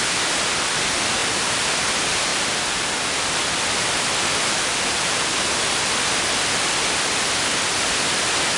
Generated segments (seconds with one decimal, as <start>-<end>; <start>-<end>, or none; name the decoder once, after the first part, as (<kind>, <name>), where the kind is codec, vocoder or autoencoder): 2.3-3.6 (vocoder, BigVGAN v2)